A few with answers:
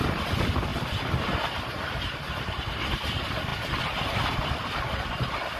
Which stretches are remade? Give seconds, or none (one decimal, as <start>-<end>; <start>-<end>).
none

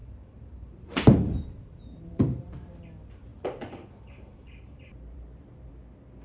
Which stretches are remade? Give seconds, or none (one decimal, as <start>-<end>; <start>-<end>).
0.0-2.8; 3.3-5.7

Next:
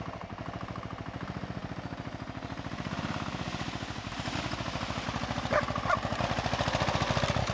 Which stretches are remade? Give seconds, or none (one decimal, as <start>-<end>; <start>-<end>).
none

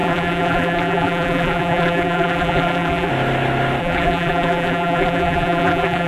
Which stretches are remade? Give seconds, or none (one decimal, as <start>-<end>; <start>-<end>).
0.0-3.1; 3.8-6.1

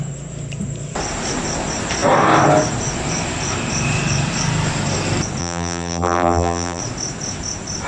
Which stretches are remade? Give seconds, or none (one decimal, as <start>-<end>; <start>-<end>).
5.4-6.8

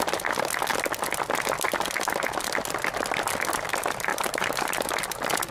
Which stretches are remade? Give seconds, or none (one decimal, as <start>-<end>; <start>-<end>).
4.1-4.9